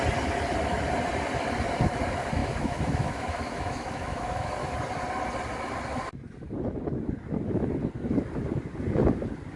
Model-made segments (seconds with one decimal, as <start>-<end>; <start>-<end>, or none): 2.4-4.5